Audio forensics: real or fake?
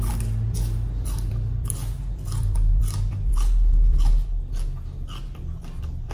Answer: real